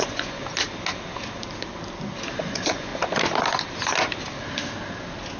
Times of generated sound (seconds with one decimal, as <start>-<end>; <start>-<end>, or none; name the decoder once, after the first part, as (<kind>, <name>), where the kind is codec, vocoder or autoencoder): 0.0-0.4 (vocoder, Vocos); 2.4-2.9